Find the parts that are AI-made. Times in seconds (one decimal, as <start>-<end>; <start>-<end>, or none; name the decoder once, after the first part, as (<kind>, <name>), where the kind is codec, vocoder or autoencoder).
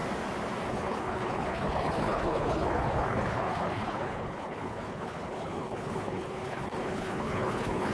0.7-7.9 (codec, HILCodec)